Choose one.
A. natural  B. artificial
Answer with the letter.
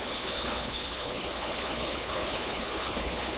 B